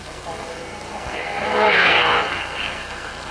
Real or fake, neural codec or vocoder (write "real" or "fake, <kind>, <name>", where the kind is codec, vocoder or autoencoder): fake, codec, SNAC